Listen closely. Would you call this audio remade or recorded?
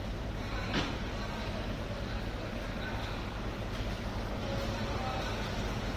recorded